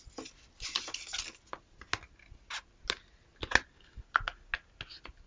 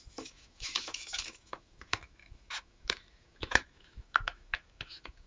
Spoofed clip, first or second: second